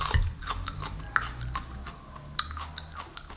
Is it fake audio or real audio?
real